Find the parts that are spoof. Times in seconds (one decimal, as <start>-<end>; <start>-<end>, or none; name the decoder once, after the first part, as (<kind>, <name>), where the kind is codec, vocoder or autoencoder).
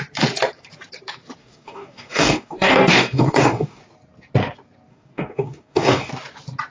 1.4-3.8 (codec, DAC); 4.9-6.1